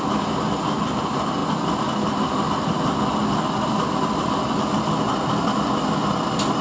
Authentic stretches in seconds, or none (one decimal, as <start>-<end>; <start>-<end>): 0.0-6.6